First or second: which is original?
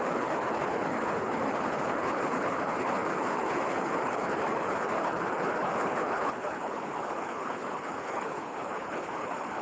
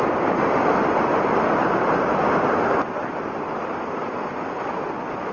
second